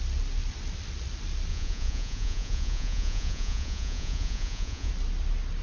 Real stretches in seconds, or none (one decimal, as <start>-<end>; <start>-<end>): 0.0-1.5; 4.9-5.6